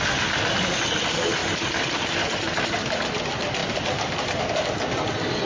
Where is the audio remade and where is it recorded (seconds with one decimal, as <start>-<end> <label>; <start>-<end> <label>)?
0.0-1.4 recorded; 1.4-3.2 remade; 3.2-3.6 recorded; 3.6-4.4 remade; 4.4-5.5 recorded